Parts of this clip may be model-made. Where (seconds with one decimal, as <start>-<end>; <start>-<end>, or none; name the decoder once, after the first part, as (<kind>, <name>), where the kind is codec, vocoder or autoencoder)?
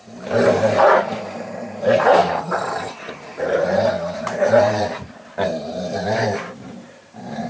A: 0.0-7.5 (vocoder, BigVGAN v2)